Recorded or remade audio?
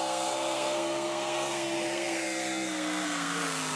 remade